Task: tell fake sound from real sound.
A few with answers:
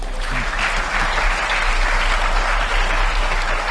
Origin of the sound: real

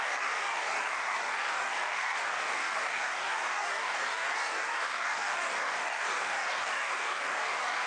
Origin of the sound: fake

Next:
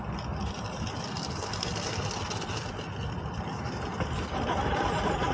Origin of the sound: real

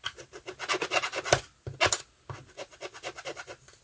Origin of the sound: real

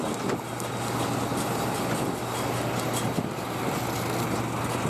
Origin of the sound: real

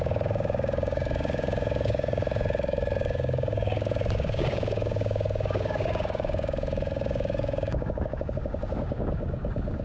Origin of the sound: fake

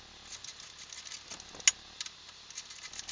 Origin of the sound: real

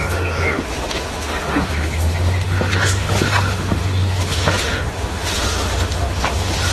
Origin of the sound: fake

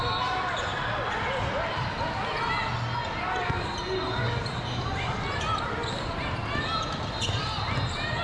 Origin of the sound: real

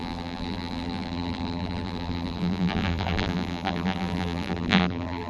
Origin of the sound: fake